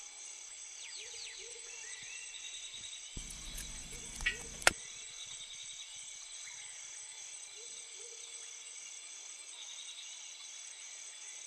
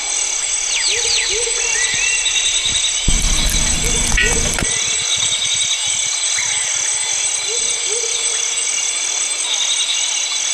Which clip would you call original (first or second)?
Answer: second